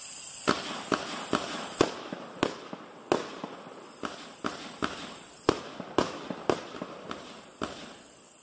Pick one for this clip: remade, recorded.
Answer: recorded